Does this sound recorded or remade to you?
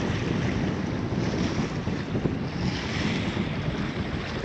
recorded